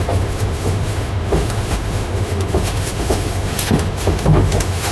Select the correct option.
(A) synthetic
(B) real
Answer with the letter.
A